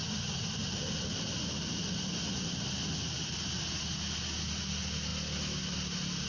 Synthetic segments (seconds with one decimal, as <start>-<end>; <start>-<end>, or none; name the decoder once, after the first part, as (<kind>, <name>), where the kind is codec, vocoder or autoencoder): none